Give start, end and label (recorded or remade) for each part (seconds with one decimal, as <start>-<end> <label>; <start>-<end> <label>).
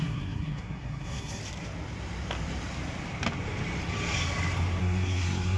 0.0-1.4 remade; 1.4-4.8 recorded; 4.8-5.6 remade